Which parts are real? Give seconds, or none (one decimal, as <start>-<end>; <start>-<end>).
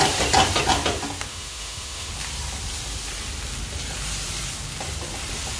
0.0-1.3; 2.1-5.6